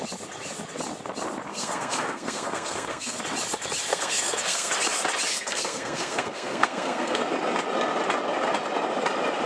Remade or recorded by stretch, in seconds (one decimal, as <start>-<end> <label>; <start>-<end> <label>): 0.0-1.5 recorded; 1.5-3.2 remade; 3.2-3.9 recorded; 3.9-4.7 remade; 4.7-5.3 recorded; 5.3-7.2 remade; 7.2-9.5 recorded

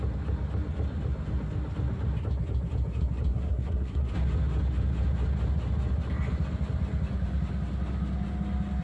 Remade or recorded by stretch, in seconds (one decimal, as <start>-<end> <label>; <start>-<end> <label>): 0.0-3.3 recorded; 3.3-4.0 remade; 4.0-8.8 recorded

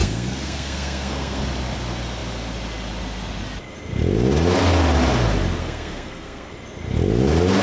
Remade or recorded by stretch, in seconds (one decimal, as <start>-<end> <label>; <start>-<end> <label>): 0.0-1.4 remade; 1.4-5.6 recorded; 5.6-6.5 remade; 6.5-7.6 recorded

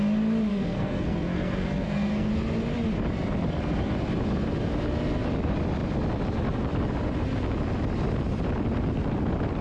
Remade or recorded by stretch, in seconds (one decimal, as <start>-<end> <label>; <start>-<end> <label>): 0.0-0.5 recorded; 0.5-2.3 remade; 2.3-9.6 recorded